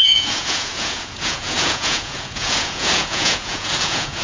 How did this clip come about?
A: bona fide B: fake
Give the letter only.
B